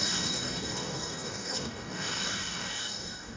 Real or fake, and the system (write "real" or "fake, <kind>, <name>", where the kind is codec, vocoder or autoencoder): fake, codec, DAC